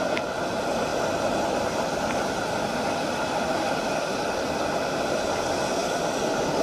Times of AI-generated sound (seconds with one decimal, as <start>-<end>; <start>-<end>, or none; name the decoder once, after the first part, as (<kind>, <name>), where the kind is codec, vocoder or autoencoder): none